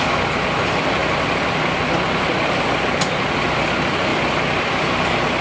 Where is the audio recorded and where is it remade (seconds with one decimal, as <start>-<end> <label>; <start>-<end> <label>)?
0.0-4.1 recorded; 4.1-4.7 remade; 4.7-5.4 recorded